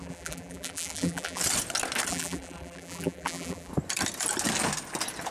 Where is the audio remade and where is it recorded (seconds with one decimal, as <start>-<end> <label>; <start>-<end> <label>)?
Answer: 0.0-1.4 remade; 1.4-2.1 recorded; 2.1-3.7 remade; 3.7-5.3 recorded